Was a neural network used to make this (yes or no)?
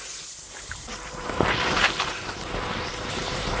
yes